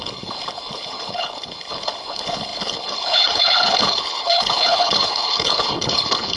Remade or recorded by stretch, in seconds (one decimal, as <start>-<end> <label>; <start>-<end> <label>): 0.0-6.4 remade